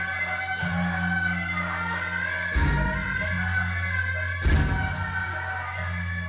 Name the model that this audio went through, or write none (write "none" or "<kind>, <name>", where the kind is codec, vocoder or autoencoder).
none